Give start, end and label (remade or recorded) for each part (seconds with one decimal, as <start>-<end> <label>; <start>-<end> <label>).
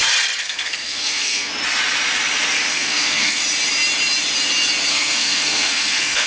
0.0-0.4 recorded; 0.4-1.5 remade; 1.5-2.7 recorded; 2.7-3.4 remade; 3.4-4.9 recorded; 4.9-6.3 remade